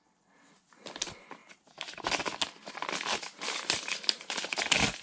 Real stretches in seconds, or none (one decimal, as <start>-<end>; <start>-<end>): 0.0-5.0